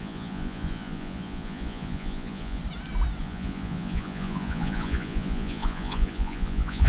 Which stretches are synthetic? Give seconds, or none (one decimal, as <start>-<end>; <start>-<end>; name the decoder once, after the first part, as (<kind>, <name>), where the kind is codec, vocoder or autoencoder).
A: 0.0-2.6 (vocoder, Vocos); 3.2-6.9